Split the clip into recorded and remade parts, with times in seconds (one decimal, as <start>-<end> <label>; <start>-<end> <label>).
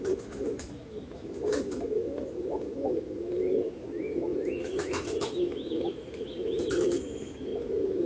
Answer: 0.0-8.1 remade